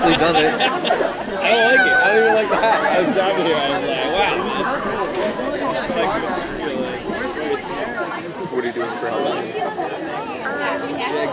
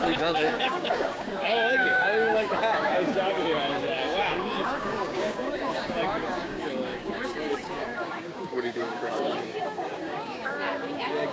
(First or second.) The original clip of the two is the first